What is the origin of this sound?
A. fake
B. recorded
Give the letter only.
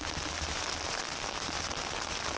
B